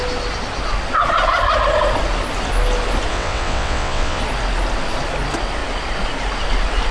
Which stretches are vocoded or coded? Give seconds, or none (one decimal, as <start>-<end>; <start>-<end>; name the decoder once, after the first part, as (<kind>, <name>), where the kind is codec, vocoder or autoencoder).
3.1-4.2 (vocoder, WaveNeXt)